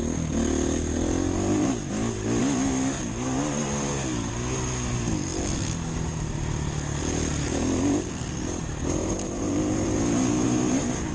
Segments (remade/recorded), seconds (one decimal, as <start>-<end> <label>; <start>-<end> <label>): 0.0-9.0 recorded; 9.0-11.1 remade